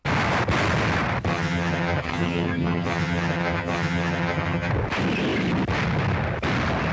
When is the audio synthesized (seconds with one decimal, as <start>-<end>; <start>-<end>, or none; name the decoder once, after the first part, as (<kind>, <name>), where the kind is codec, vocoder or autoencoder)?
1.3-4.7 (vocoder, HiFi-GAN)